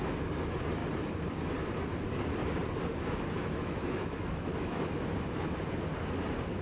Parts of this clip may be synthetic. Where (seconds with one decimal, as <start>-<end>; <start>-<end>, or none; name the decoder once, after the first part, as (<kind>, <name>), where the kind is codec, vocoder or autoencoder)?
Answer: 3.4-5.6 (autoencoder, DAC-VAE)